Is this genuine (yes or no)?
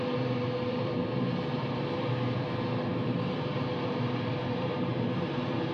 no